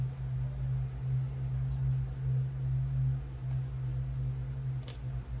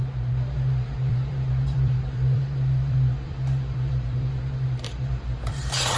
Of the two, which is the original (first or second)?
first